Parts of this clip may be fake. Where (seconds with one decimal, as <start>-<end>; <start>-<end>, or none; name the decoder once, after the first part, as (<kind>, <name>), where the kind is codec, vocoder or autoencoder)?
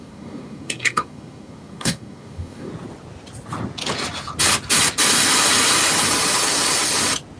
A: 0.0-2.7 (codec, SNAC)